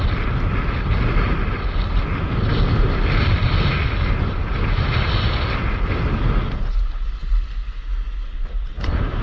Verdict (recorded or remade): recorded